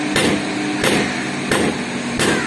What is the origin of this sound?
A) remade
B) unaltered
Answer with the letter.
B